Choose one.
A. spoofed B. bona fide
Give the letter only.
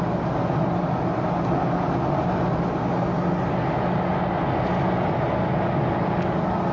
B